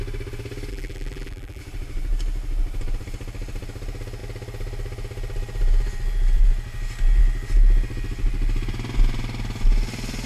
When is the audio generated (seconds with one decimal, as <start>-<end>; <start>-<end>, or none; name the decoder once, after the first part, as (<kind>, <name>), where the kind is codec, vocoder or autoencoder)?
0.7-1.6 (vocoder, BigVGAN v2)